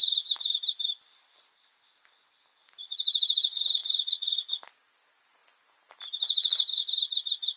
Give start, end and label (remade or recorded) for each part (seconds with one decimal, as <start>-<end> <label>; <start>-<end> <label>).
0.0-1.4 remade; 1.4-3.8 recorded; 3.8-4.5 remade; 4.5-5.4 recorded; 5.4-6.8 remade; 6.8-7.6 recorded